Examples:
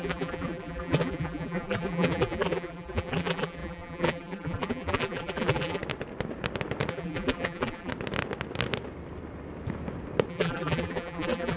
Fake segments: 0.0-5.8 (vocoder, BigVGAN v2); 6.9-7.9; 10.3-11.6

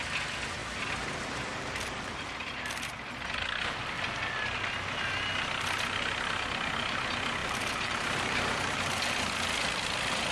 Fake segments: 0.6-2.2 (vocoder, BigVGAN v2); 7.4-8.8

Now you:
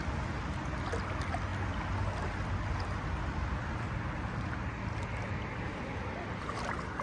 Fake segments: none

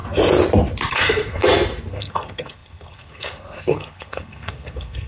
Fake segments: 0.9-1.4 (codec, SNAC); 1.9-5.1